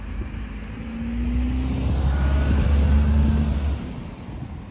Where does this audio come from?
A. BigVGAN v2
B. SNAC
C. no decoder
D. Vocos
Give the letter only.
C